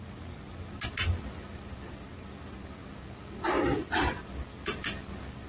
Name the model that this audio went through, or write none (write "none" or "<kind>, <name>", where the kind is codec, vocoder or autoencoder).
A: none